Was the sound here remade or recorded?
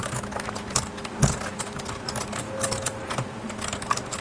recorded